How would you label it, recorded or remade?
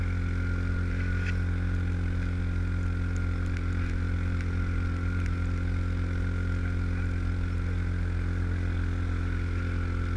recorded